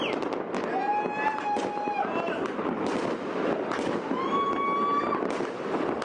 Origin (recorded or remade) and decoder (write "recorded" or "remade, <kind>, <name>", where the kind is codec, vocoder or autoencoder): recorded